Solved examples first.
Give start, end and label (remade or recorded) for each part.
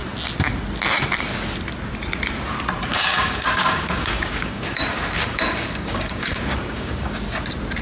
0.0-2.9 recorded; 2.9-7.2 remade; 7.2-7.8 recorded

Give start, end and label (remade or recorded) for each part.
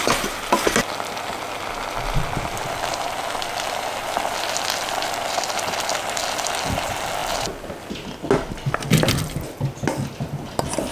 0.0-10.9 recorded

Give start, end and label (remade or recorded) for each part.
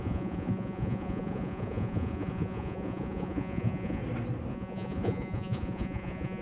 0.0-4.0 remade; 4.0-4.5 recorded; 4.5-6.4 remade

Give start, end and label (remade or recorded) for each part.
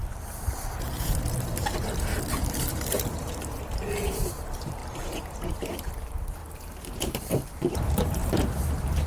0.0-2.1 remade; 2.1-2.7 recorded; 2.7-4.8 remade; 4.8-5.5 recorded; 5.5-9.1 remade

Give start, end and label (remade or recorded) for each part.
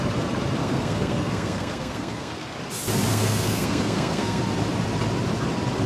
0.0-0.6 recorded; 0.6-2.5 remade; 2.5-3.1 recorded; 3.1-4.4 remade; 4.4-5.9 recorded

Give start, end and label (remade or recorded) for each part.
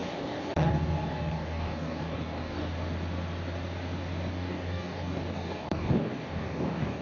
0.0-2.7 remade; 2.7-4.3 recorded; 4.3-7.0 remade